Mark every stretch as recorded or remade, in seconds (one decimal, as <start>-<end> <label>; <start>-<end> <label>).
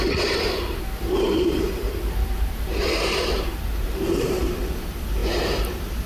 0.0-5.2 remade; 5.2-6.1 recorded